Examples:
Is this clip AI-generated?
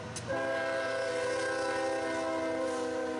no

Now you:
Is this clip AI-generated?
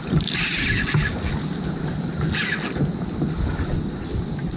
no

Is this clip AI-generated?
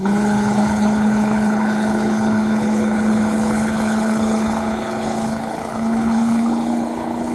yes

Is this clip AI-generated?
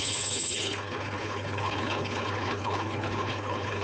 yes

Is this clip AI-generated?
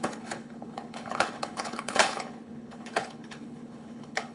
yes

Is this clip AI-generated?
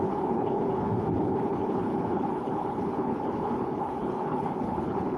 yes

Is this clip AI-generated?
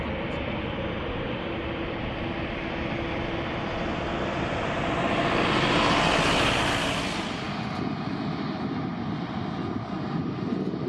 no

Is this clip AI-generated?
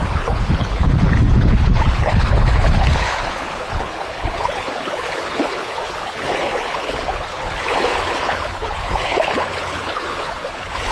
yes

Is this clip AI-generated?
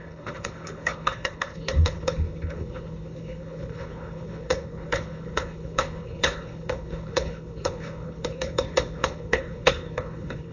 yes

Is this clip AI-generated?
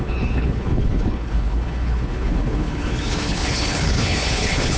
yes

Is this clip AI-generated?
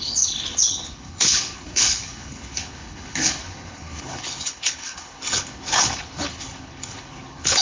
yes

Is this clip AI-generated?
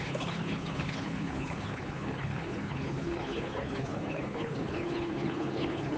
yes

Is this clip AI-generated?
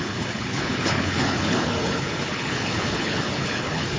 yes